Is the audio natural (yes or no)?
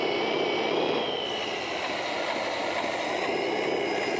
yes